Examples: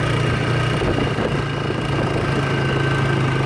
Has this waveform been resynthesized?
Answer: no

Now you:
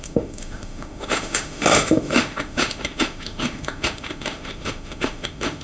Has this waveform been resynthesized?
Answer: yes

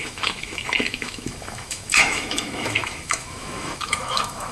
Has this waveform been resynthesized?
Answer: yes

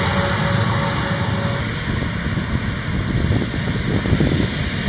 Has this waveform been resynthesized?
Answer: no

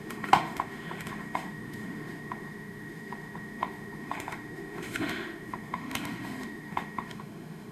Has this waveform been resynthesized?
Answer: yes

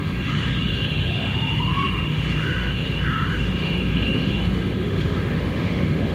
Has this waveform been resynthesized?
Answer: yes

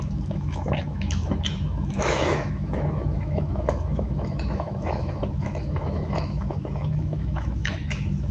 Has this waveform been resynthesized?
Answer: yes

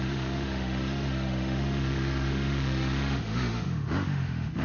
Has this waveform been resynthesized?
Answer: yes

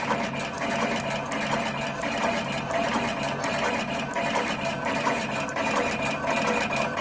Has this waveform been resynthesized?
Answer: no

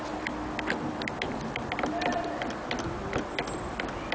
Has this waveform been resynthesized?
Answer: no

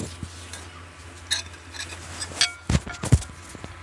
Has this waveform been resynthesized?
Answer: no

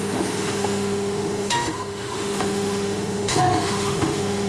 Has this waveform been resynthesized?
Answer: yes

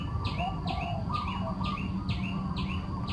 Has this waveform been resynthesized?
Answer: no